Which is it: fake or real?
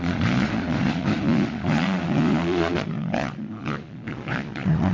fake